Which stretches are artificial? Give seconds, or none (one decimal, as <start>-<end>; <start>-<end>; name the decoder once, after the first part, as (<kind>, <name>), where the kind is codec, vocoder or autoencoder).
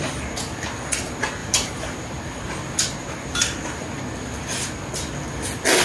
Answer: 1.4-2.0 (vocoder, BigVGAN v2); 3.0-3.8